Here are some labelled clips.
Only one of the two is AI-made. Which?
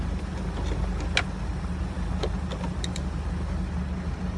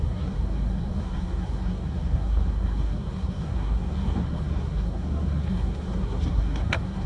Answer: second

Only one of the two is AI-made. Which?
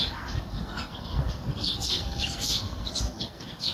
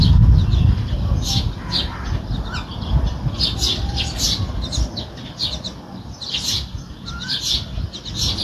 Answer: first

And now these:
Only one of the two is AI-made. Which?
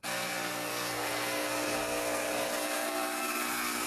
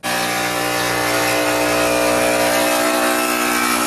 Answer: first